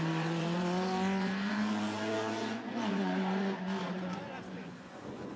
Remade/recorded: remade